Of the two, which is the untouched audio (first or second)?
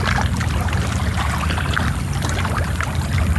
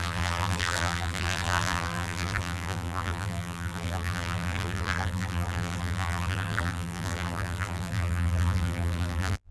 first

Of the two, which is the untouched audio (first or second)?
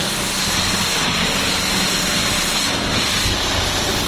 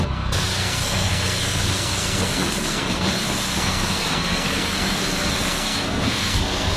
first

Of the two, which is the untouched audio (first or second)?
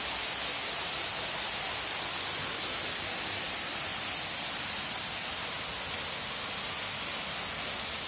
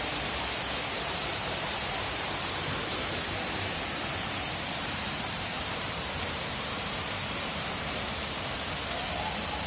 first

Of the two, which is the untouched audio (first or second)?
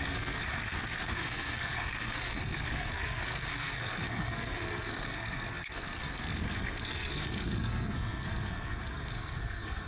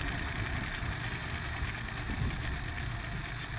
second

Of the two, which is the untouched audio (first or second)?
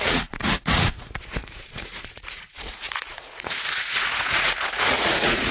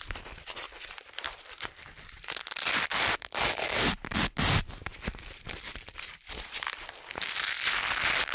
second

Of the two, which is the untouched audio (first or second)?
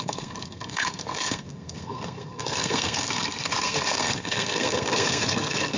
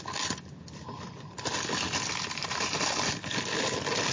second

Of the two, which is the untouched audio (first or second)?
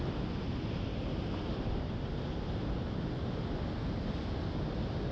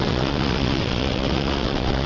first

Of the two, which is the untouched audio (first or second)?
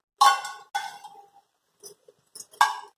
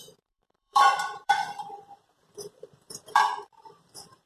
first